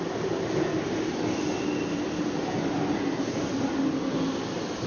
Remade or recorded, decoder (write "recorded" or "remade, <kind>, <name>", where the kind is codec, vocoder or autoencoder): recorded